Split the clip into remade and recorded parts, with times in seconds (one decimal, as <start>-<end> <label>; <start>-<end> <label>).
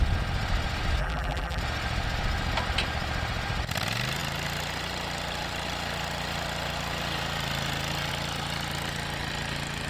0.0-1.0 recorded; 1.0-1.6 remade; 1.6-9.9 recorded